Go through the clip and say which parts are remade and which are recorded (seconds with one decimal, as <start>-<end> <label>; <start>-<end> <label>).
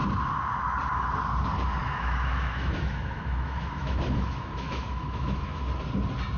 0.0-1.8 recorded; 1.8-5.6 remade; 5.6-6.4 recorded